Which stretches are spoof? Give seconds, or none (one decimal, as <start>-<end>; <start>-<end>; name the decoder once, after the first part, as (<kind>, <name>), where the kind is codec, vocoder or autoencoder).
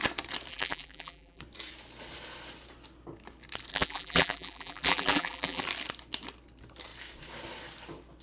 0.5-1.4 (vocoder, BigVGAN v2); 3.7-5.6